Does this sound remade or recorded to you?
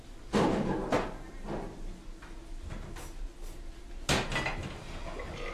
recorded